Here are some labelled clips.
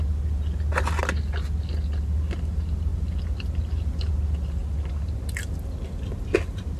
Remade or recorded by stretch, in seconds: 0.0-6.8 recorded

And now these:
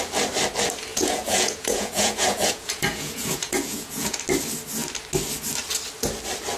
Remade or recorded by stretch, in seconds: 0.0-0.9 recorded; 0.9-4.2 remade; 4.2-6.6 recorded

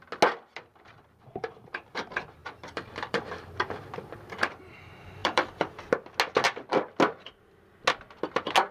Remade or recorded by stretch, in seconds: 0.0-0.7 recorded; 0.7-1.9 remade; 1.9-2.4 recorded; 2.4-3.2 remade; 3.2-5.2 recorded; 5.2-5.9 remade; 5.9-8.7 recorded